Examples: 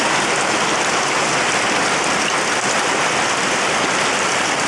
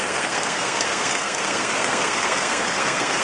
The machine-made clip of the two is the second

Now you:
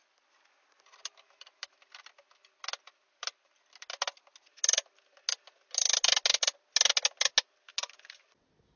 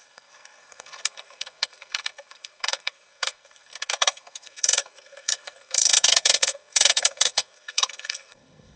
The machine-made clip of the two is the second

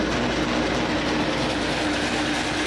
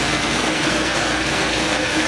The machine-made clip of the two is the second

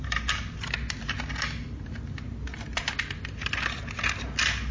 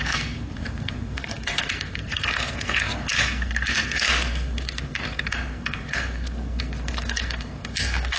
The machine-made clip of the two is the second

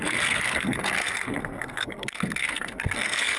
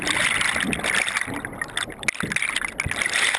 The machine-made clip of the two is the first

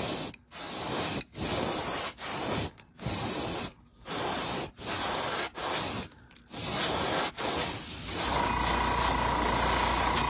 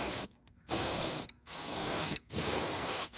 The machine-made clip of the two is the second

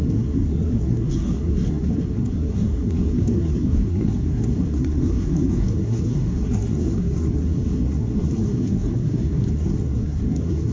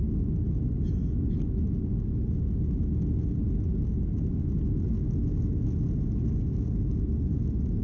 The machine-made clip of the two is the first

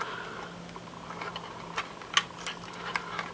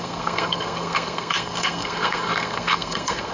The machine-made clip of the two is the second